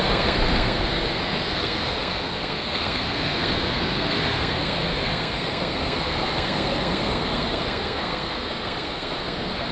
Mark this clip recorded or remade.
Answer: remade